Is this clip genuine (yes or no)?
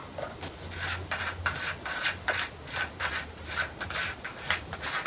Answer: yes